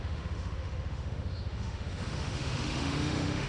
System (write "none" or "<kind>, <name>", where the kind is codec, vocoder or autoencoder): autoencoder, DAC-VAE